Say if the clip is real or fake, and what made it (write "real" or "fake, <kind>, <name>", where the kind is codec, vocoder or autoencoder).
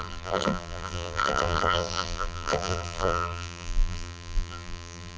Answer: fake, vocoder, BigVGAN v2